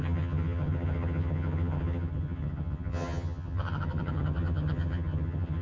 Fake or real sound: fake